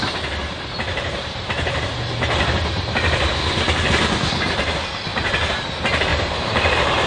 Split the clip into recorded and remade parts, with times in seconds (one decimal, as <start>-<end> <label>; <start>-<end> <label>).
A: 0.0-0.9 recorded; 0.9-1.9 remade; 1.9-5.1 recorded; 5.1-5.6 remade; 5.6-6.1 recorded; 6.1-7.1 remade